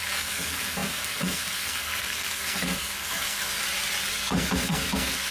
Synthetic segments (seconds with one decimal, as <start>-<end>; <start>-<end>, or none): 0.0-3.6; 4.1-5.3